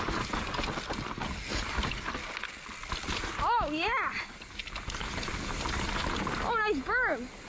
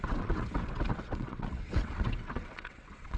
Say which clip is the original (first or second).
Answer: first